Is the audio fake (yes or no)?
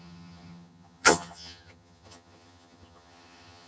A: yes